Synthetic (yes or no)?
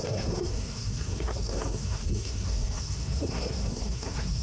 yes